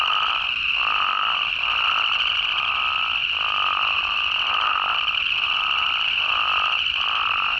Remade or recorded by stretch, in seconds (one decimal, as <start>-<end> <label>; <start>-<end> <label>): 0.0-7.6 recorded